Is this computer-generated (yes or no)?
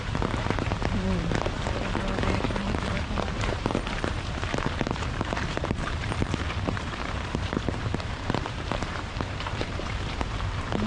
yes